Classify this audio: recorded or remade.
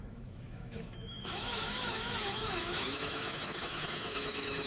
remade